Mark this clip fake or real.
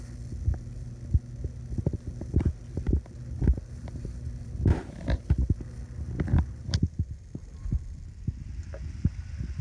real